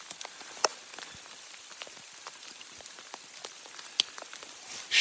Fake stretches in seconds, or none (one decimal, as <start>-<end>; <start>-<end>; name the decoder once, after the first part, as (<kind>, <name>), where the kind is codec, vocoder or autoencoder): 0.7-2.6 (vocoder, BigVGAN v2)